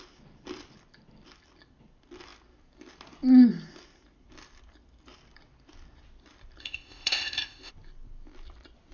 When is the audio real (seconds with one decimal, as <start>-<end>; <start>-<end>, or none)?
0.0-6.6; 7.7-8.9